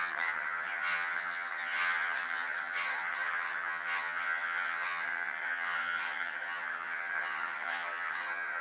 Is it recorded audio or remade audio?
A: remade